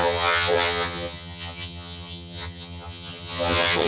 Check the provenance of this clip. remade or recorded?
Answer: remade